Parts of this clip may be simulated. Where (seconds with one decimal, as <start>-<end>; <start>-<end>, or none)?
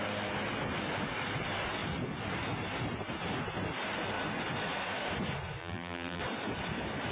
5.6-6.2